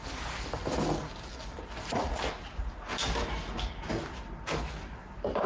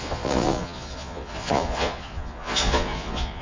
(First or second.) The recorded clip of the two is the first